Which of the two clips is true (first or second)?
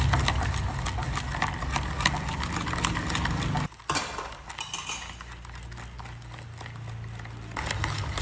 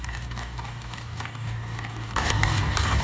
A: first